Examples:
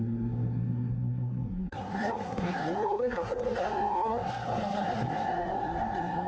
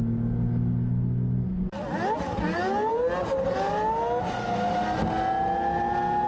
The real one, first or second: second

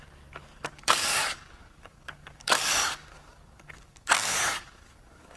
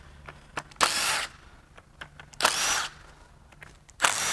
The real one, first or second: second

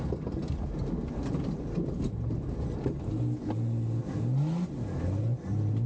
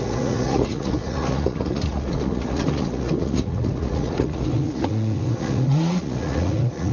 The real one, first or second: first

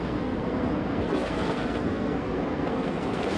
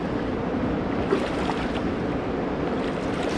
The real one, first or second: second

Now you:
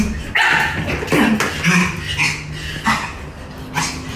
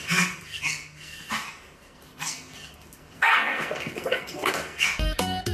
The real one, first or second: first